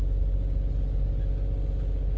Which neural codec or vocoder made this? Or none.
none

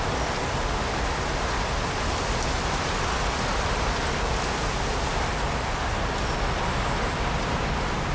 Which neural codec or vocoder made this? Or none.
none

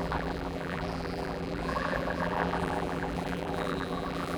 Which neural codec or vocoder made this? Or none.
vocoder, BigVGAN v2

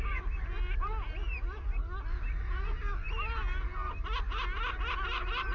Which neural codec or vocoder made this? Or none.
none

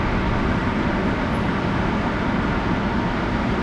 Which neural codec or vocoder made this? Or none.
none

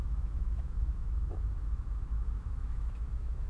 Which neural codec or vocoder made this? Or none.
autoencoder, DAC-VAE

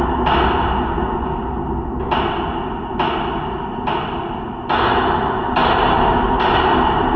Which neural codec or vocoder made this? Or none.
none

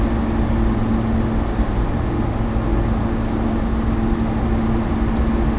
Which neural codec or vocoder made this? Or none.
none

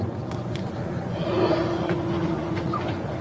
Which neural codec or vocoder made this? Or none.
vocoder, Vocos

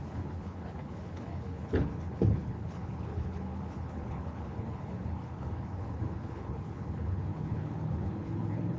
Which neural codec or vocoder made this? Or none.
codec, HILCodec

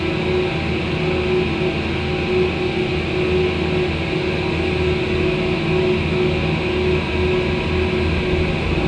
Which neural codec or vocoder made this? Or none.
none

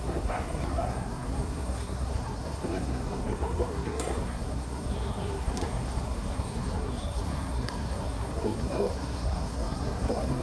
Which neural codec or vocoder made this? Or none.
codec, SNAC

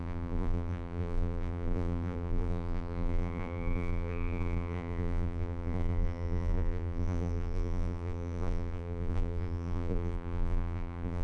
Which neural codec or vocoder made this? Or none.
vocoder, BigVGAN v2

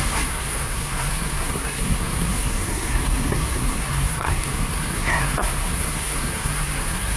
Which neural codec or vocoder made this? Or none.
codec, SNAC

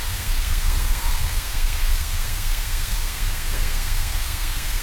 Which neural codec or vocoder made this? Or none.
codec, SNAC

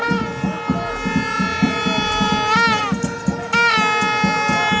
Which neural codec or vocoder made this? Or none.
none